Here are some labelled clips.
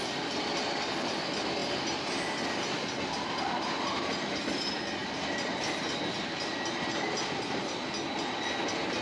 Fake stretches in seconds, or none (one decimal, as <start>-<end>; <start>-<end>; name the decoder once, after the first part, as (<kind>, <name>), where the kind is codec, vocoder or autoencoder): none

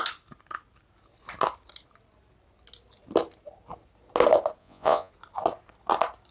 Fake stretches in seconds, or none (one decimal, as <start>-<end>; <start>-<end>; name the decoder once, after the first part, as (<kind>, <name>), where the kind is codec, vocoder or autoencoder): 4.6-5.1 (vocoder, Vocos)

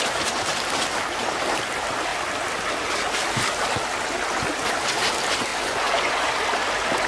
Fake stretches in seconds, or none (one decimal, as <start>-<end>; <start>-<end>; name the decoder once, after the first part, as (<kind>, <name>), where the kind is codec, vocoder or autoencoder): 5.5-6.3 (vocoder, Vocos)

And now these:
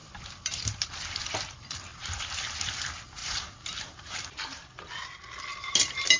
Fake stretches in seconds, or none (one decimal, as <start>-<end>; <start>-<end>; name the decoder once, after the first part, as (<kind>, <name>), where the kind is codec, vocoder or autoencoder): 0.0-0.9 (vocoder, BigVGAN v2); 1.9-2.7; 3.2-4.9; 5.5-6.2